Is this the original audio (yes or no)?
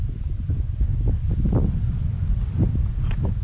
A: yes